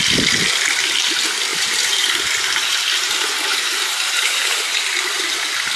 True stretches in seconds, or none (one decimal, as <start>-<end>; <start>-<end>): 0.0-1.5; 2.1-3.5; 4.9-5.8